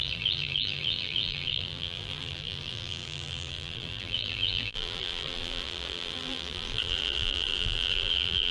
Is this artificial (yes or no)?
yes